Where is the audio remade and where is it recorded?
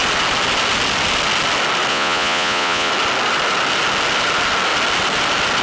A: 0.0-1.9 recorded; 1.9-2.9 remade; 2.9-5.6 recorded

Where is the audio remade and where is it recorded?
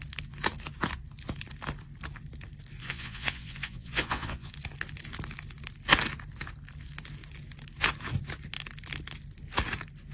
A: 0.0-2.8 recorded; 2.8-4.5 remade; 4.5-10.1 recorded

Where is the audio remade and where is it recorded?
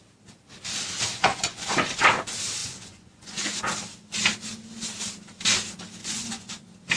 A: 0.0-1.1 recorded; 1.1-1.9 remade; 1.9-2.6 recorded; 2.6-3.6 remade; 3.6-6.0 recorded; 6.0-6.6 remade; 6.6-7.0 recorded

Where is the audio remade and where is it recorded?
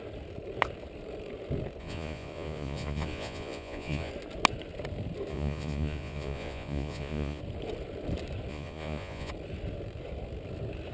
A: 0.0-1.8 recorded; 1.8-4.1 remade; 4.1-5.3 recorded; 5.3-7.4 remade; 7.4-8.5 recorded; 8.5-9.3 remade; 9.3-10.9 recorded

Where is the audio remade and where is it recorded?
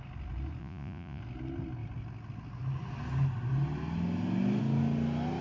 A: 0.0-0.6 recorded; 0.6-1.2 remade; 1.2-5.4 recorded